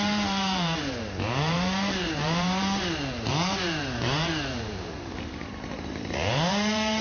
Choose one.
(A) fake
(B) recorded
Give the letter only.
A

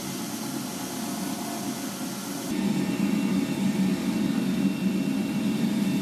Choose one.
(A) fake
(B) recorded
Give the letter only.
B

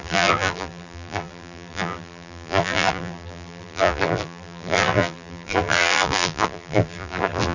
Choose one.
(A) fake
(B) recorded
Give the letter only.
A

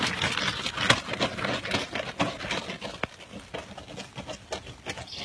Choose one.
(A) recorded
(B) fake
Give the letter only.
A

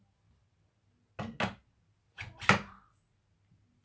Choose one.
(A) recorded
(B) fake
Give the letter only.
A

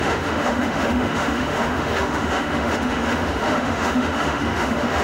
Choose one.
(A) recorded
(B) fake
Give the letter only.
B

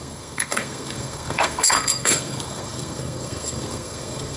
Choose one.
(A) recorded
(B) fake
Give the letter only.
B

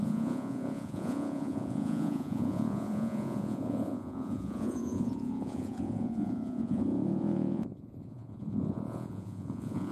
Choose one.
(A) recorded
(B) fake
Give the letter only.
B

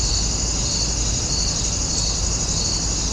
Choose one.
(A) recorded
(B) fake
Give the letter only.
A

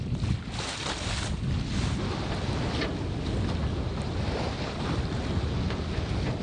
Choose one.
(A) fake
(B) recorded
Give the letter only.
B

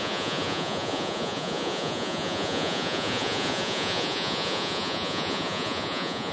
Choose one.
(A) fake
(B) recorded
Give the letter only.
A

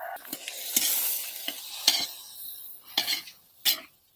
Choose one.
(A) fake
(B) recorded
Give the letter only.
B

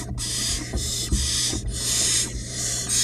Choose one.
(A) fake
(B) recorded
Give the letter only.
A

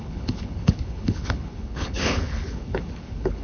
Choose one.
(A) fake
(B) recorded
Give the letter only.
A